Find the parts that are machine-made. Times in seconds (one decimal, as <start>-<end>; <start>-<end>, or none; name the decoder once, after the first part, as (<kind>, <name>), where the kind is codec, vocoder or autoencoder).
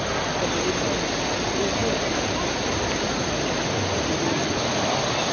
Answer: none